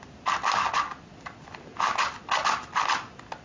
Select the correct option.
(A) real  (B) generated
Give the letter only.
A